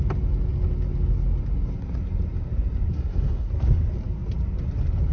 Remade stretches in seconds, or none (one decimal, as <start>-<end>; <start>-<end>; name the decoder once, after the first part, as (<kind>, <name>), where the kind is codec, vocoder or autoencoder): 2.9-3.5 (codec, SNAC)